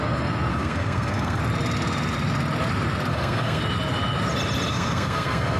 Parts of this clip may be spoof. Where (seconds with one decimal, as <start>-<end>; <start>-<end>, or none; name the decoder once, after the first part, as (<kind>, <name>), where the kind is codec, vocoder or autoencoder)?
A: 0.5-1.4 (codec, SNAC); 3.1-3.6; 4.7-5.6